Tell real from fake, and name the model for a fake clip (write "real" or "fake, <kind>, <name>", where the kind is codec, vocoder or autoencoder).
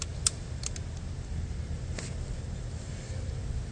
real